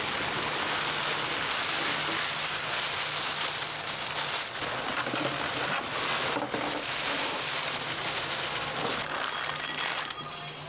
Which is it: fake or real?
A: real